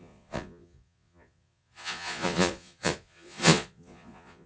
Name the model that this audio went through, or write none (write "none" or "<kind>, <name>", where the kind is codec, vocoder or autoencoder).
vocoder, Vocos